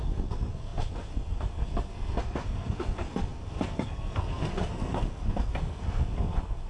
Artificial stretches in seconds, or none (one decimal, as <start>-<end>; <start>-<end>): 0.0-6.7